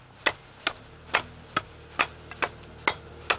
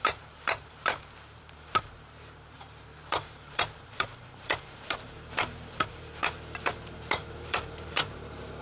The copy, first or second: second